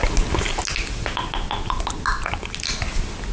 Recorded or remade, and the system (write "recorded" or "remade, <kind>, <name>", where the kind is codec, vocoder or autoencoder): recorded